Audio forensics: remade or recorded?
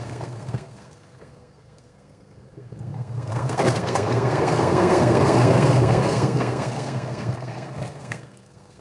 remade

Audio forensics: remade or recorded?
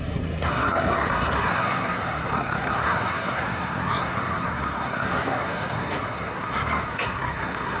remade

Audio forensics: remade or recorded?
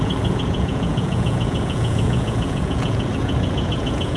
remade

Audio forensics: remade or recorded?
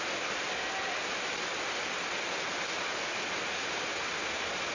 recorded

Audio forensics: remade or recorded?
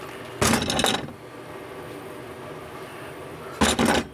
recorded